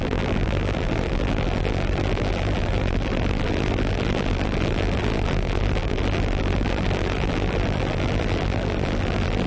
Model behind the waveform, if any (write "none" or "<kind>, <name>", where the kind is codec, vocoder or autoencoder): vocoder, BigVGAN v2